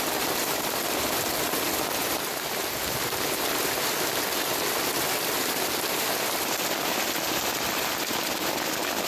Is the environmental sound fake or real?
real